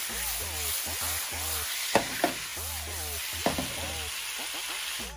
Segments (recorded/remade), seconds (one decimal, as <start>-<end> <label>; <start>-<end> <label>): 0.0-5.2 recorded